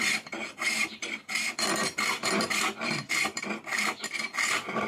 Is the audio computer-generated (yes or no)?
no